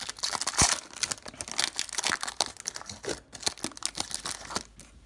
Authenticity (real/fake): real